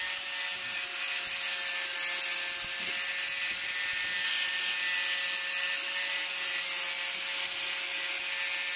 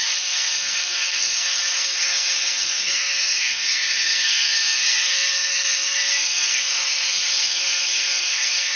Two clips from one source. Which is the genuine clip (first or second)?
first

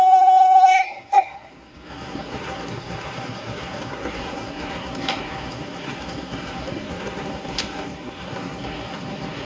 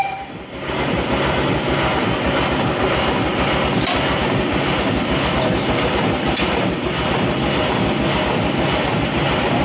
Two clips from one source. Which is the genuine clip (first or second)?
second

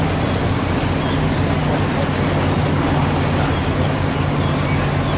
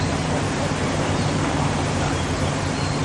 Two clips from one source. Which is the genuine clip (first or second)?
first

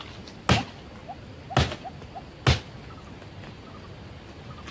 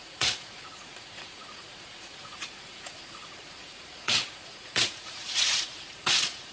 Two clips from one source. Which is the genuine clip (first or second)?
first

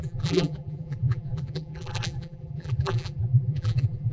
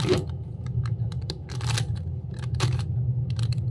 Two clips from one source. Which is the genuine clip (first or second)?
second